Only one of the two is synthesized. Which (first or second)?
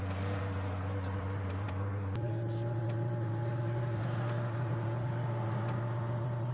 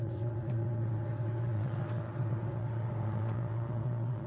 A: second